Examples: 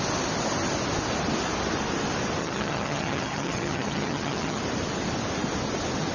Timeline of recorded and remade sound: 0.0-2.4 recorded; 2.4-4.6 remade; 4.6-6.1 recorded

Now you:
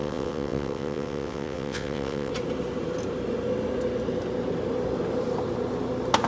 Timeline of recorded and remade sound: 0.0-2.3 remade; 2.3-6.3 recorded

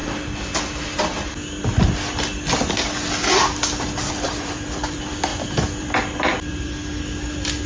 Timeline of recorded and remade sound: 0.0-4.1 recorded; 4.1-5.3 remade; 5.3-5.8 recorded; 5.8-6.8 remade; 6.8-7.7 recorded

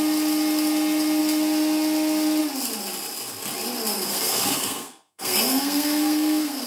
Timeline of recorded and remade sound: 0.0-3.9 recorded; 3.9-6.7 remade

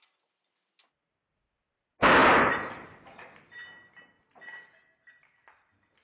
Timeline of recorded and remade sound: 0.0-6.0 recorded

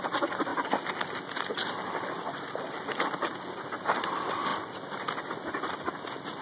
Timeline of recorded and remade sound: 0.0-6.4 recorded